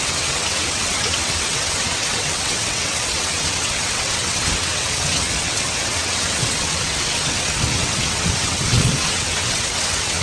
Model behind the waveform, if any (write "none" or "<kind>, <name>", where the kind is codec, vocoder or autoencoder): vocoder, WaveNeXt